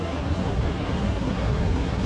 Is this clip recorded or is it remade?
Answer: remade